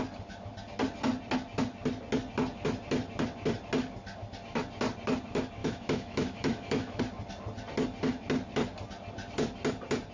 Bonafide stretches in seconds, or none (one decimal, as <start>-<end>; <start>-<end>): 0.0-5.6; 7.0-10.1